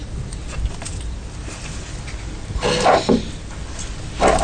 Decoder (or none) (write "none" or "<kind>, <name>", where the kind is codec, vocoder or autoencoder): none